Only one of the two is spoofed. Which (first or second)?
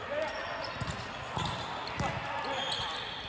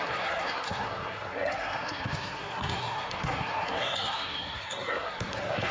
second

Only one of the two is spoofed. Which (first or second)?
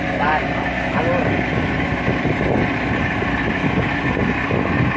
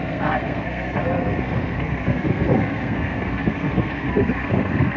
second